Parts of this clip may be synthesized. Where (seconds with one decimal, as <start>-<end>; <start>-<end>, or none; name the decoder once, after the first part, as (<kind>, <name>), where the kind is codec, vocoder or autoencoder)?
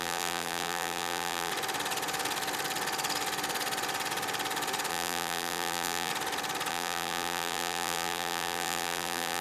0.0-1.5 (vocoder, BigVGAN v2); 4.9-6.1; 6.7-9.4